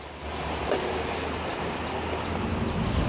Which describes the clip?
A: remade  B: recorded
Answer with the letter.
B